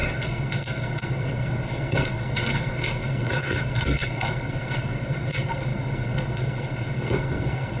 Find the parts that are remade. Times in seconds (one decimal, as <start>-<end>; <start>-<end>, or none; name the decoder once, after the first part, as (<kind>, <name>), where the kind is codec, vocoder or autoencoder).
0.0-7.8 (codec, SNAC)

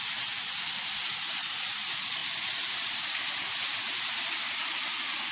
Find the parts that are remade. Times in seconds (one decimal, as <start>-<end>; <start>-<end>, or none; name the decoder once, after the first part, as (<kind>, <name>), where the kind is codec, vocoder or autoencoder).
none

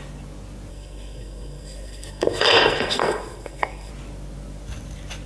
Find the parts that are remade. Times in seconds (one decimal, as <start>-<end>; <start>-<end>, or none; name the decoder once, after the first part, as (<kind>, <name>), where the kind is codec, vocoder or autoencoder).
0.7-3.9 (codec, SNAC)

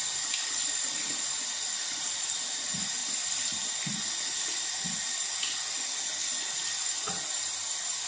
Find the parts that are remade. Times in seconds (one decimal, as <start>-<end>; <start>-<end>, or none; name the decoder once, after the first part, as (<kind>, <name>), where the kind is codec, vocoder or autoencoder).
none

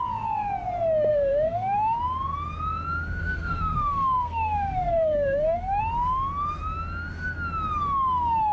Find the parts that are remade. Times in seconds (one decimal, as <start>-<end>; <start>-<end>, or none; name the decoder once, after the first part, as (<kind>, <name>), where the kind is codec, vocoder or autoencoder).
1.1-2.0 (codec, SNAC); 3.2-5.8

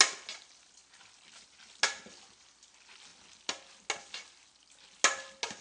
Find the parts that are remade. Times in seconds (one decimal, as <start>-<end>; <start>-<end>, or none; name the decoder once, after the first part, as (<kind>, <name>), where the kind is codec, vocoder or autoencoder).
none

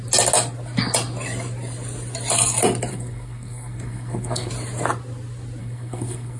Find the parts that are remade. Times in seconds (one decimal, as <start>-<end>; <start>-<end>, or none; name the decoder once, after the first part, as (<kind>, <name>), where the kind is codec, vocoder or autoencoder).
2.9-4.5 (codec, SNAC); 5.6-6.4

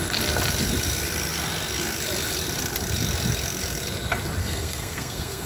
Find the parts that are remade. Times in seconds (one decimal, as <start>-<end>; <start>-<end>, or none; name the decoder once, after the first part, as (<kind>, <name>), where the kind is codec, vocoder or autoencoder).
4.4-5.5 (codec, SNAC)